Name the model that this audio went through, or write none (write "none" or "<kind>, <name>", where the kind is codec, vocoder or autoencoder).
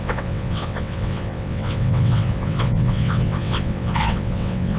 vocoder, WaveNeXt